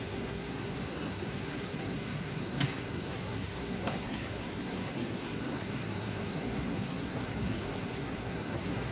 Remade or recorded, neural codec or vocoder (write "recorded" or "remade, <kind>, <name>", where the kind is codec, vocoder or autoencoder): remade, codec, SNAC